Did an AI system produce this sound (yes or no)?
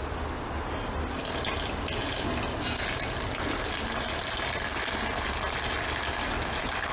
no